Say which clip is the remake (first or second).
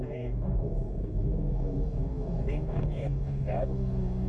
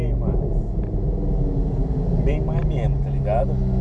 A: first